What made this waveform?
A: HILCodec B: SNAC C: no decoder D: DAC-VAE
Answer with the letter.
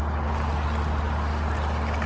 C